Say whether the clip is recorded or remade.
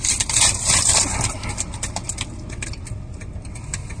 remade